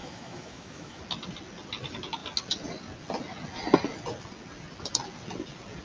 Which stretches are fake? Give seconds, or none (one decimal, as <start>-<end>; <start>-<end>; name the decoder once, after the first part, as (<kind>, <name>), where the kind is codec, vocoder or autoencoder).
0.0-1.0 (autoencoder, DAC-VAE)